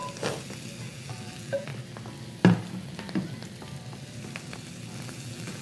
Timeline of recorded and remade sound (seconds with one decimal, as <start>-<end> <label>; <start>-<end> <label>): 0.0-0.8 recorded; 0.8-1.7 remade; 1.7-5.1 recorded; 5.1-5.6 remade